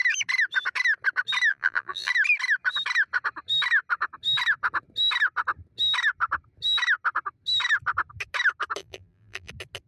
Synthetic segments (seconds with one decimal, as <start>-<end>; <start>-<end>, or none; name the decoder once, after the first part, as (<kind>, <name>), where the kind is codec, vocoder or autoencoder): 1.5-2.1 (vocoder, BigVGAN v2); 8.8-9.5